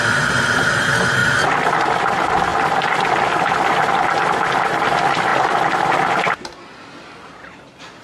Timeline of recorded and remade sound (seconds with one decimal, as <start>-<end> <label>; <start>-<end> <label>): 0.0-1.2 recorded; 1.2-2.0 remade; 2.0-5.3 recorded; 5.3-6.1 remade; 6.1-8.0 recorded